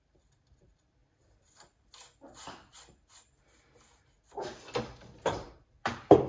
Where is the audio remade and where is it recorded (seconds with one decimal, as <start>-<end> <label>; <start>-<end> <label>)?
0.0-1.0 remade; 1.0-4.8 recorded; 4.8-6.3 remade